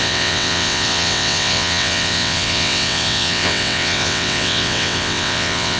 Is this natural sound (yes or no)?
no